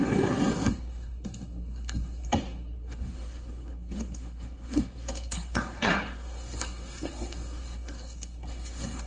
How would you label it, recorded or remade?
remade